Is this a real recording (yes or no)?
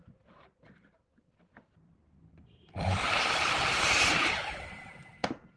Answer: no